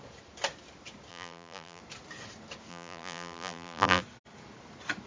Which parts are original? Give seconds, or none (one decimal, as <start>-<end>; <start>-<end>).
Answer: 0.0-1.1; 1.8-2.7; 4.0-5.1